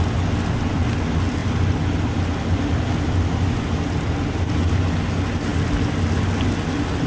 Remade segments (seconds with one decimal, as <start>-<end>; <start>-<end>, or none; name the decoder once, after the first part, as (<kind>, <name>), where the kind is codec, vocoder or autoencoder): none

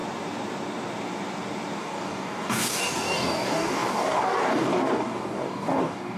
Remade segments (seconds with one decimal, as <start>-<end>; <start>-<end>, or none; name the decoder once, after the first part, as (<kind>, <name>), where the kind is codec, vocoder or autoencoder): 1.8-6.2 (codec, DAC)

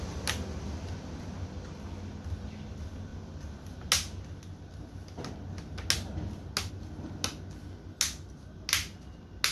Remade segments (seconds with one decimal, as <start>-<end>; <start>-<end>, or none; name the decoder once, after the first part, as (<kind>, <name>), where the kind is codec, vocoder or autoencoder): none